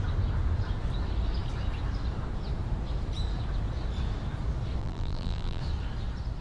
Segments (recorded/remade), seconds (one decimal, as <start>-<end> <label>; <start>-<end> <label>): 0.0-4.8 recorded; 4.8-5.6 remade; 5.6-6.4 recorded